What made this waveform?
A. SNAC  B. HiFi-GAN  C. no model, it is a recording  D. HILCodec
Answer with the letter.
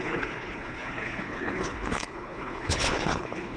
D